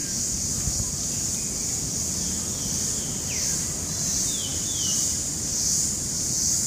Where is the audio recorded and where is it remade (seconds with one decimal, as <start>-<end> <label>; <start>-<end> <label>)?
0.0-1.1 remade; 1.1-4.5 recorded; 4.5-6.1 remade; 6.1-6.7 recorded

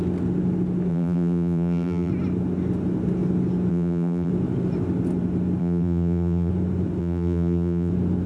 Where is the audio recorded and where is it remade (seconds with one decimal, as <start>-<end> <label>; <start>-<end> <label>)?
0.0-0.9 recorded; 0.9-2.1 remade; 2.1-3.7 recorded; 3.7-4.3 remade; 4.3-5.6 recorded; 5.6-6.5 remade; 6.5-7.0 recorded; 7.0-7.9 remade; 7.9-8.3 recorded

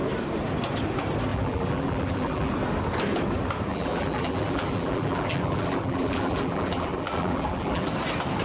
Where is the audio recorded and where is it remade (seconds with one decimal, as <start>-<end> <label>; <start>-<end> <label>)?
0.0-1.3 recorded; 1.3-2.5 remade; 2.5-3.7 recorded; 3.7-7.9 remade; 7.9-8.4 recorded

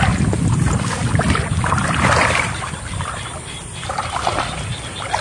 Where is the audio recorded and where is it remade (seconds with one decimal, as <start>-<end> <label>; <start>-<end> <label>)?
0.0-1.0 recorded; 1.0-3.9 remade; 3.9-5.2 recorded